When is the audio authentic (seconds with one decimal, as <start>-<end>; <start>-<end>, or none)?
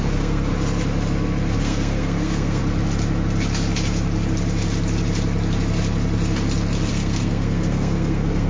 0.5-1.6; 2.6-6.9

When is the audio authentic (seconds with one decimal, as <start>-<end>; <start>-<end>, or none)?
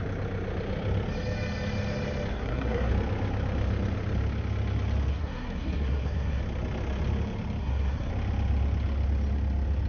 0.0-2.3; 2.9-5.1; 6.4-7.6; 8.1-9.9